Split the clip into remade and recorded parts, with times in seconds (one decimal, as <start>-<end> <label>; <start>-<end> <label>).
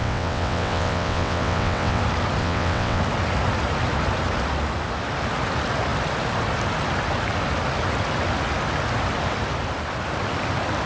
0.0-2.0 remade; 2.0-2.4 recorded; 2.4-3.0 remade; 3.0-10.9 recorded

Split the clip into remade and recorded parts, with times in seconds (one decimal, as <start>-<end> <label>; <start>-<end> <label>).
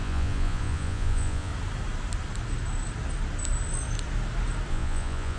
0.0-1.5 remade; 1.5-4.7 recorded; 4.7-5.4 remade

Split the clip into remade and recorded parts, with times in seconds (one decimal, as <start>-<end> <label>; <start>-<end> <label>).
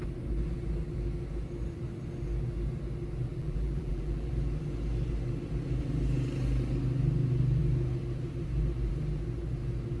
0.0-3.3 recorded; 3.3-4.3 remade; 4.3-10.0 recorded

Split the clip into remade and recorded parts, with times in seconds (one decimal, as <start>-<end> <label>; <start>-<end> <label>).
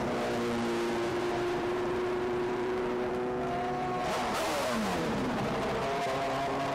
0.0-1.1 recorded; 1.1-3.1 remade; 3.1-4.6 recorded; 4.6-5.5 remade; 5.5-6.7 recorded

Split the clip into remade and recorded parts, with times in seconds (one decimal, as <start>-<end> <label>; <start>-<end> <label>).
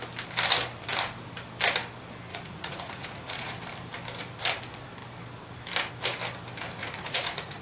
0.0-2.3 recorded; 2.3-3.5 remade; 3.5-6.8 recorded; 6.8-7.6 remade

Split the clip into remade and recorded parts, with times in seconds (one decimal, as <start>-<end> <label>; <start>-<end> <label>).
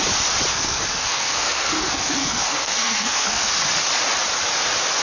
0.0-0.5 recorded; 0.5-3.5 remade; 3.5-5.0 recorded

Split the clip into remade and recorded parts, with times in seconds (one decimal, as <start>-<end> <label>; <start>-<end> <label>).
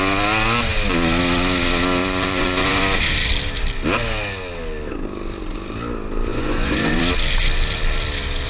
0.0-2.0 recorded; 2.0-2.8 remade; 2.8-6.3 recorded; 6.3-7.0 remade; 7.0-8.5 recorded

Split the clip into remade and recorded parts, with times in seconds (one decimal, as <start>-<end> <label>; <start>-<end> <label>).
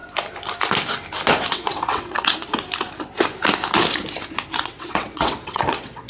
0.0-1.5 recorded; 1.5-2.3 remade; 2.3-4.6 recorded; 4.6-6.1 remade